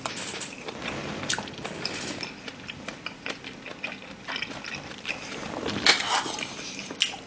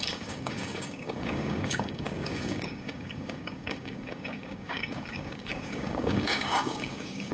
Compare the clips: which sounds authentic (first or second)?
first